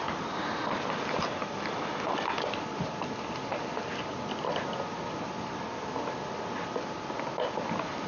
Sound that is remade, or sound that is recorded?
recorded